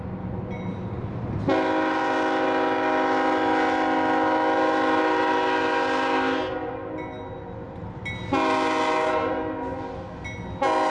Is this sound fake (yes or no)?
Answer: no